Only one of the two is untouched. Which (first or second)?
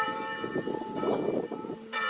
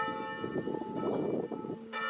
second